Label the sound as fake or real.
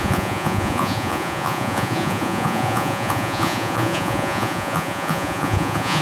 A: fake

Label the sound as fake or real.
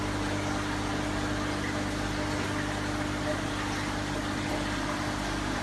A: real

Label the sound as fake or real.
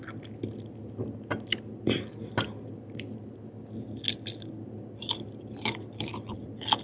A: real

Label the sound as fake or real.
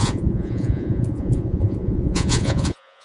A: fake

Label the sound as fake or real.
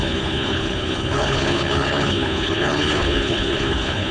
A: fake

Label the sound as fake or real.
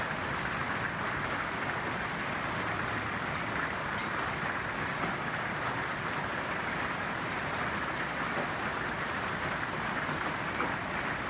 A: real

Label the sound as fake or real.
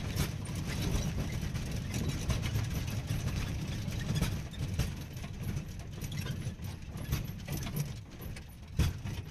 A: real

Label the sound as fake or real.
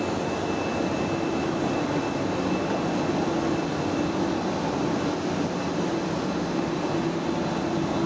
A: real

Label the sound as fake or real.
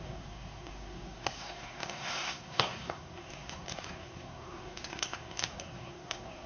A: fake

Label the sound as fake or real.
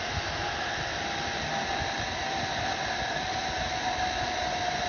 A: real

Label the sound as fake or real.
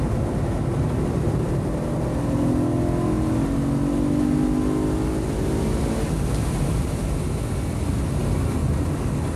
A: real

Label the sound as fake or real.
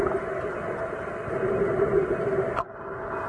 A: real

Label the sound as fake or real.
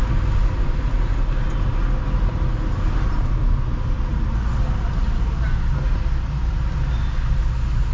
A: real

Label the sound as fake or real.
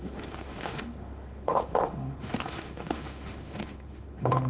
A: fake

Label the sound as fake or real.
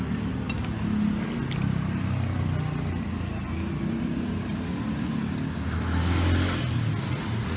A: real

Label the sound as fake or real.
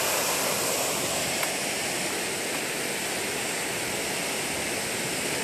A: real